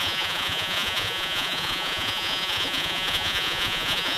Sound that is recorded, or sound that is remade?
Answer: remade